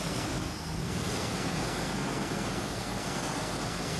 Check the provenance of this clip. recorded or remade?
remade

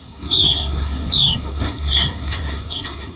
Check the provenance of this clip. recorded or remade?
remade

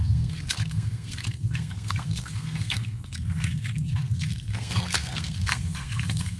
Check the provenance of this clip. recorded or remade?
remade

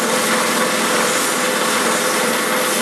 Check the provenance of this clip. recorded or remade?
recorded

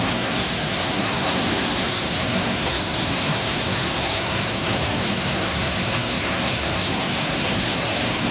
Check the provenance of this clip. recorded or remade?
remade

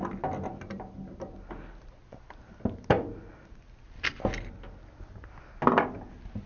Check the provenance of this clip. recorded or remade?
recorded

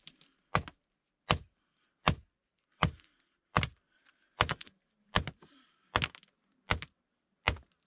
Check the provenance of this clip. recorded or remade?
recorded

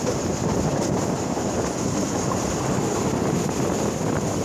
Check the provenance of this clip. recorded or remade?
recorded